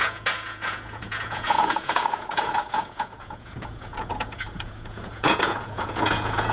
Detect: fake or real fake